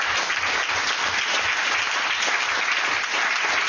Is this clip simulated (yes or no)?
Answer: no